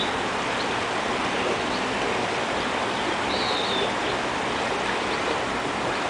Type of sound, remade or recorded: recorded